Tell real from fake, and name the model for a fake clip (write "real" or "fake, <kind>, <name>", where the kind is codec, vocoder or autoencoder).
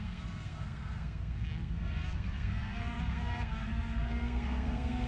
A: fake, codec, SNAC